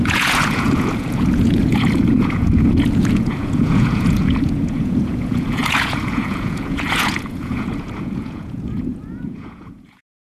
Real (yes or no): no